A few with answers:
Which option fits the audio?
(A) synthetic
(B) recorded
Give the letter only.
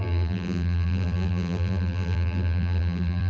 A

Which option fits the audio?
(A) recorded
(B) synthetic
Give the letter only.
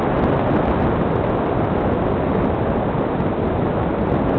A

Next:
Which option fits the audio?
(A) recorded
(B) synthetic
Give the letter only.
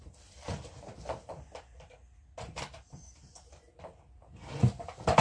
A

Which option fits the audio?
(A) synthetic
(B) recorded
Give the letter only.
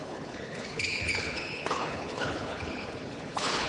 A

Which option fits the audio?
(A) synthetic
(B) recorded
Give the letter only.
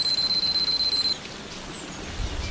B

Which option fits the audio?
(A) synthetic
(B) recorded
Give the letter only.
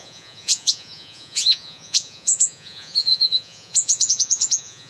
A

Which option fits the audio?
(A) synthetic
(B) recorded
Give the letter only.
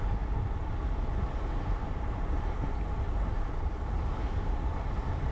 B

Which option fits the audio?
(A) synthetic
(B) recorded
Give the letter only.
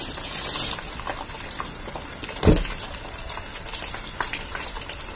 B